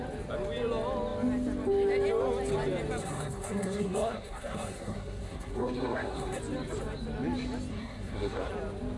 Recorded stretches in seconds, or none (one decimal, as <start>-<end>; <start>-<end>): 0.0-3.0; 6.4-7.7; 8.5-9.0